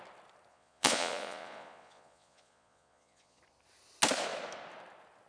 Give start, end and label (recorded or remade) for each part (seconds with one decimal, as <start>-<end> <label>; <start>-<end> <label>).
0.0-0.5 recorded; 0.5-3.4 remade; 3.4-5.3 recorded